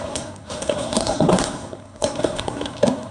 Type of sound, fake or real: fake